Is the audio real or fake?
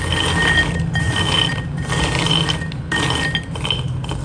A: real